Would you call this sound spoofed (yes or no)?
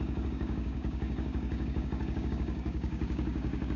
yes